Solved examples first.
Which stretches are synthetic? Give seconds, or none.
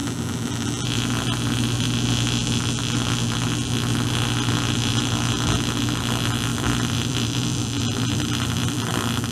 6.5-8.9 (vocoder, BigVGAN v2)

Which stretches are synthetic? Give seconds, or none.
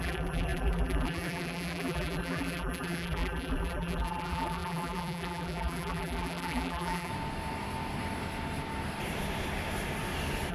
0.0-7.1 (vocoder, BigVGAN v2)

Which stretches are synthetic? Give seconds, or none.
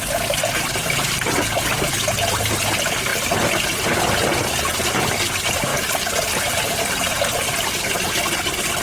none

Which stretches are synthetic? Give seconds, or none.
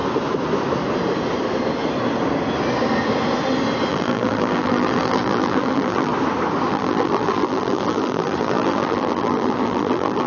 3.9-6.1 (vocoder, BigVGAN v2); 6.7-10.3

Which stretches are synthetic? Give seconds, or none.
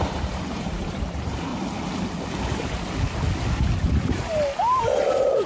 0.0-1.5 (vocoder, BigVGAN v2); 4.8-5.5